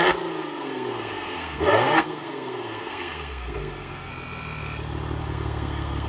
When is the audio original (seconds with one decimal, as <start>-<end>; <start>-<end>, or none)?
0.0-0.4; 4.1-5.2